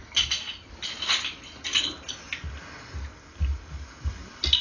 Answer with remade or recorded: recorded